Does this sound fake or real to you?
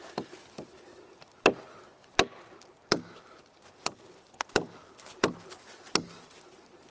real